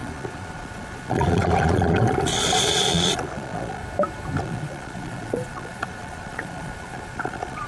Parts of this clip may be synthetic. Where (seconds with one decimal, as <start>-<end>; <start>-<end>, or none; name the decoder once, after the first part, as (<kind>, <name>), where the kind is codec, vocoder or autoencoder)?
0.0-3.8 (vocoder, Vocos); 4.4-7.7